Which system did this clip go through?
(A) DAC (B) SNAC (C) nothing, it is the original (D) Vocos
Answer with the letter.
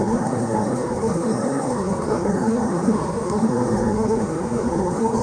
B